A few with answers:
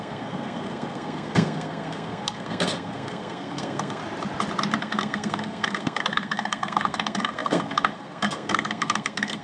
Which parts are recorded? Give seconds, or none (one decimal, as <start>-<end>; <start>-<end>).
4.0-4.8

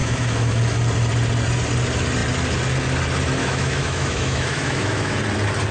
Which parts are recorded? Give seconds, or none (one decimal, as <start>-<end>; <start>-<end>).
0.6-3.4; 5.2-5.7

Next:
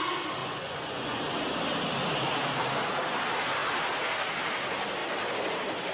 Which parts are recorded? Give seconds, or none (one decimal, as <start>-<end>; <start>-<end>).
0.0-0.4; 1.2-5.9